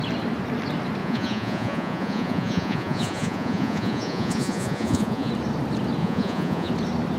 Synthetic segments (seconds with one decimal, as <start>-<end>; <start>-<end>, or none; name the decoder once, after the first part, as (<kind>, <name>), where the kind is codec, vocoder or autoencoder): 1.0-5.3 (vocoder, Vocos); 6.0-6.7